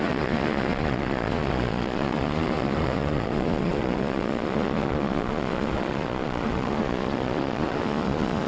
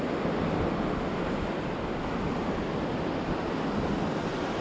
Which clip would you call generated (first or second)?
first